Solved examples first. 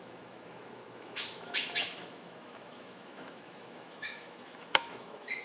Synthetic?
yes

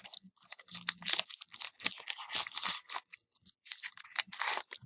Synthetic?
no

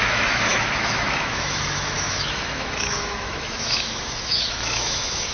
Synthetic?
yes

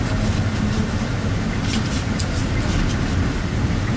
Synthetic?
no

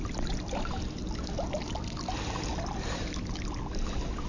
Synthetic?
no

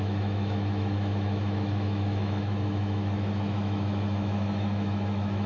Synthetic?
yes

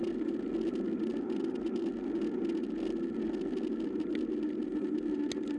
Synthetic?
no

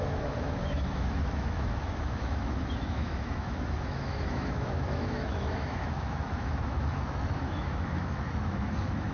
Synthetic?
yes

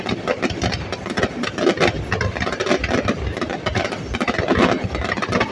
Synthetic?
no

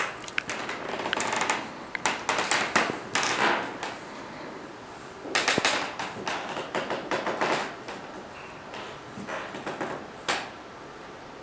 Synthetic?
no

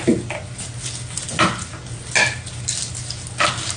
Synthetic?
no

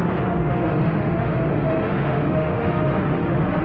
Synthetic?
yes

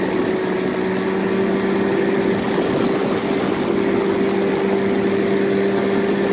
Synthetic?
no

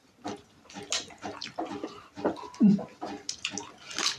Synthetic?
no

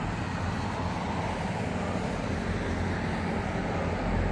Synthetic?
no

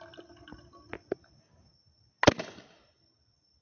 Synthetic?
no